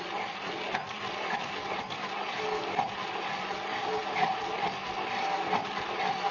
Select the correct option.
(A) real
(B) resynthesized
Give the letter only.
A